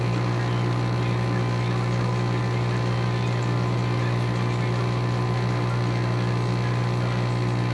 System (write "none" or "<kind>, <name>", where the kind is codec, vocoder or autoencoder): none